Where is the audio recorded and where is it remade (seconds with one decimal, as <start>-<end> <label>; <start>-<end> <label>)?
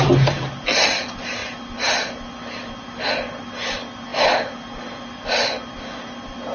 0.0-6.5 recorded